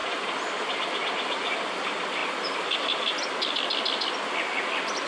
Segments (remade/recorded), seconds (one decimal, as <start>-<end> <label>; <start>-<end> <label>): 0.0-5.1 recorded